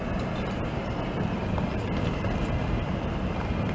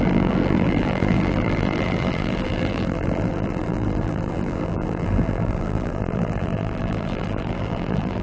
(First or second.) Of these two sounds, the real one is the first